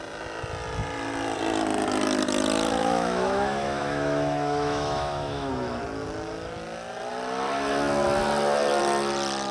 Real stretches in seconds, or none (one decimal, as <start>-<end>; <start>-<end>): 0.0-2.8; 5.5-9.5